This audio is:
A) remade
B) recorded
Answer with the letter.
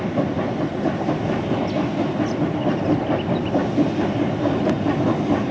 B